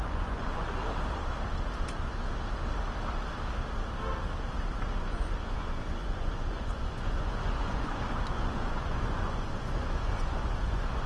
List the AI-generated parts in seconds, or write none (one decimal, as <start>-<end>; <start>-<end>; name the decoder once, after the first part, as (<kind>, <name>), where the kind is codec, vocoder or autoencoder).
0.0-0.8 (vocoder, Vocos); 5.0-11.1